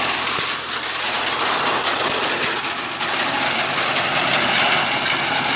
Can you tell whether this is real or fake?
real